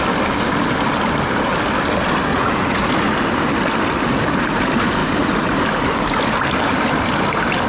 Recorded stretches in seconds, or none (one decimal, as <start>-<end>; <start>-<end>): 0.0-2.3; 2.9-7.7